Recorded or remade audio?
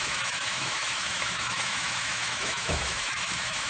remade